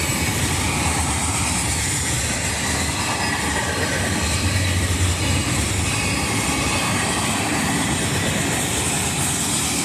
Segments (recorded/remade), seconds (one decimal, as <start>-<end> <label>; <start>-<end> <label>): 0.0-9.8 recorded